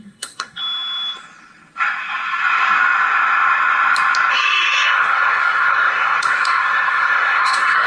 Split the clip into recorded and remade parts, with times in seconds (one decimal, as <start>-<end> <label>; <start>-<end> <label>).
0.0-0.6 remade; 0.6-4.3 recorded; 4.3-7.9 remade